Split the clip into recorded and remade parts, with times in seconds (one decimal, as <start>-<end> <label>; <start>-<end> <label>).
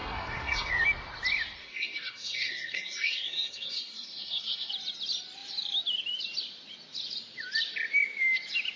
0.0-0.7 remade; 0.7-1.6 recorded; 1.6-4.7 remade; 4.7-8.8 recorded